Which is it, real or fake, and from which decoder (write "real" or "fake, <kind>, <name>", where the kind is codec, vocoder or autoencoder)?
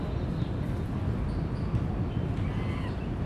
real